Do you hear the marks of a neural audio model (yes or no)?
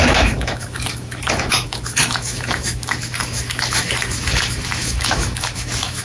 yes